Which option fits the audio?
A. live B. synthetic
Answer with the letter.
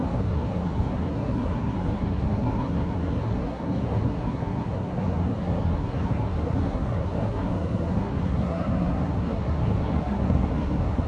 B